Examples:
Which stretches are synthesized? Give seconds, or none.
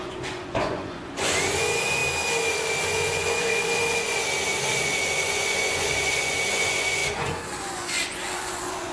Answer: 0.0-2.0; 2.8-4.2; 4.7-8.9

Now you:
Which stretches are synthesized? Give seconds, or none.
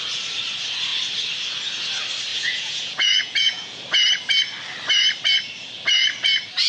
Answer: 2.3-3.8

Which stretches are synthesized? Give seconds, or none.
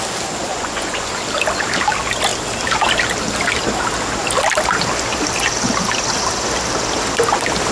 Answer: 0.5-1.1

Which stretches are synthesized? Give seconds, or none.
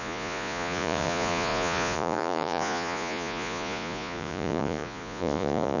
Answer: 0.0-5.8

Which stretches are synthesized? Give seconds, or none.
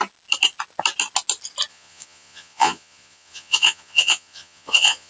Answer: 1.7-5.1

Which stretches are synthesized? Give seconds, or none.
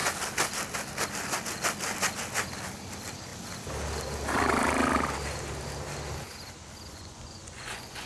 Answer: 6.9-8.1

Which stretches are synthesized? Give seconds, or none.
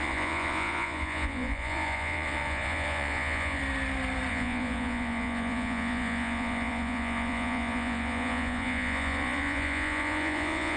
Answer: 0.0-3.6; 4.3-10.8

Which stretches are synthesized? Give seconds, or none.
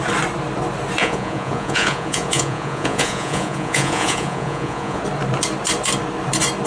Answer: 1.0-5.0